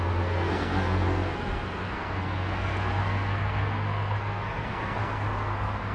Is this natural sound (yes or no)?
no